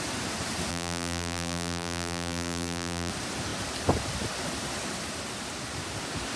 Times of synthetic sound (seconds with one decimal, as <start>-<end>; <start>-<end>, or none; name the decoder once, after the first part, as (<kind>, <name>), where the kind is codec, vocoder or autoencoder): 0.7-3.1 (vocoder, BigVGAN v2)